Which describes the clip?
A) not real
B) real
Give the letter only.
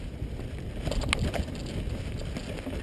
B